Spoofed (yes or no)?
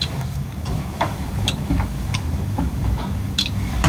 yes